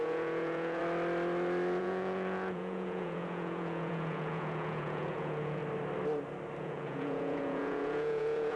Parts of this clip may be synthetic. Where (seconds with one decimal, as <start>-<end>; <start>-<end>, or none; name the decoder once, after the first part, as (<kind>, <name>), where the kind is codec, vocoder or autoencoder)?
0.0-0.8 (vocoder, Vocos); 1.8-5.6; 6.6-8.6